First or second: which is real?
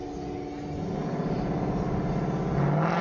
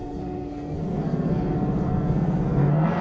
first